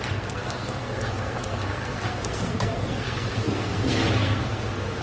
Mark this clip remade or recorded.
remade